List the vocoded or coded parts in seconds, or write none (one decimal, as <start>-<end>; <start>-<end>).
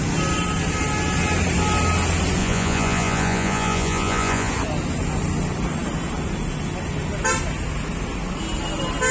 2.4-4.5